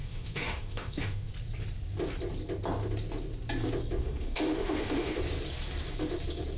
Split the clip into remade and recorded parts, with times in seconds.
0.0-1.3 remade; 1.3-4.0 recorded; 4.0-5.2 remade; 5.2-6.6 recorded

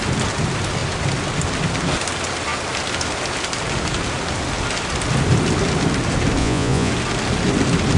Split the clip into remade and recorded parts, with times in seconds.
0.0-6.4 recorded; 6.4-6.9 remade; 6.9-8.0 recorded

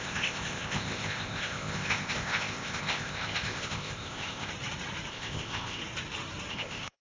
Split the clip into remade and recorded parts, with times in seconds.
0.0-4.5 remade; 4.5-5.1 recorded; 5.1-5.8 remade; 5.8-6.5 recorded; 6.5-7.0 remade

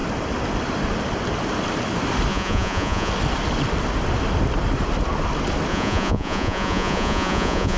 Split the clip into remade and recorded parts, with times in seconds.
0.0-2.3 recorded; 2.3-3.1 remade; 3.1-5.7 recorded; 5.7-7.8 remade